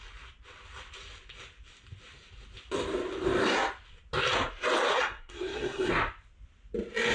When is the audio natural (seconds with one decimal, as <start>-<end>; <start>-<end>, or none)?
0.0-4.9; 5.9-7.1